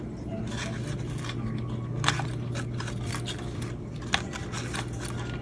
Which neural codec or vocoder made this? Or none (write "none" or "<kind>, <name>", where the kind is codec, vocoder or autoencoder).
none